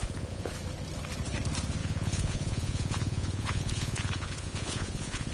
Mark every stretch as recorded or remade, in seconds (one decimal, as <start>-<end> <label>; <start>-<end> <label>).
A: 0.0-0.5 remade; 0.5-1.8 recorded; 1.8-5.3 remade